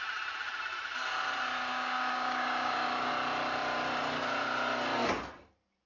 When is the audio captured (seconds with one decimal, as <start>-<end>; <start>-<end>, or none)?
0.0-1.7; 3.1-5.9

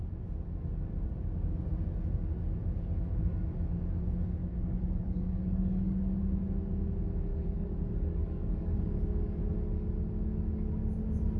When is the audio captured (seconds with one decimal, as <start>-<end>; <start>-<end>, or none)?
0.0-4.4; 6.2-7.3; 9.4-11.4

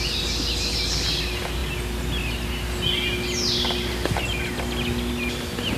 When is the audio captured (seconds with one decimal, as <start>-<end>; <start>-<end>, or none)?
0.0-5.8

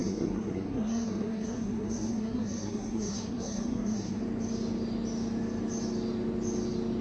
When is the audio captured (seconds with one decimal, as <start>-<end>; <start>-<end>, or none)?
4.2-7.0

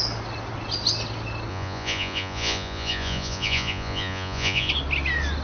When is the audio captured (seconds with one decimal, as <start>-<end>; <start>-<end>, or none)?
0.0-1.5; 4.7-5.4

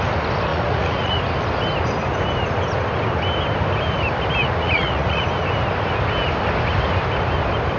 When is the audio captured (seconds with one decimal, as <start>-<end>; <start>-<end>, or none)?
0.0-0.5; 1.2-4.4; 5.2-7.8